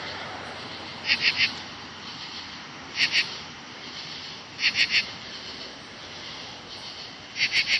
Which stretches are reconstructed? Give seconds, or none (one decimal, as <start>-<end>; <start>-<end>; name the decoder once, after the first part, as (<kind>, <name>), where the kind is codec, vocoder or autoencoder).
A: 0.0-6.0 (vocoder, BigVGAN v2); 6.7-7.8